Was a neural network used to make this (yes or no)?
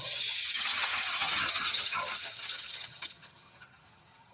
yes